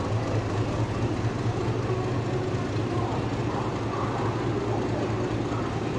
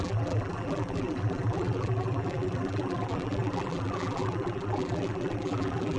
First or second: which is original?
first